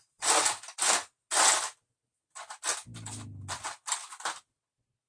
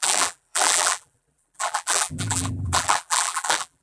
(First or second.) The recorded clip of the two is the first